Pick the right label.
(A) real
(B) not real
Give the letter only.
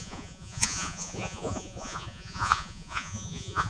B